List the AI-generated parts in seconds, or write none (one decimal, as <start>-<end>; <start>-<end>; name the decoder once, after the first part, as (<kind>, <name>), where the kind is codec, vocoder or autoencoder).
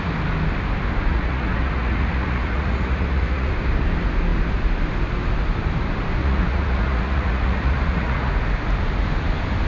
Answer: 1.1-3.5 (vocoder, Vocos); 6.2-8.3